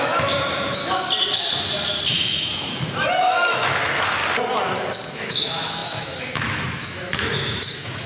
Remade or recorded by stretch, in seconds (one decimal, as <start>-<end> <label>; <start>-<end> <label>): 0.0-0.8 remade; 0.8-2.1 recorded; 2.1-4.2 remade; 4.2-5.1 recorded; 5.1-8.1 remade